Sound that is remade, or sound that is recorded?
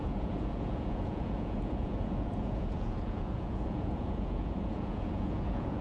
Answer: remade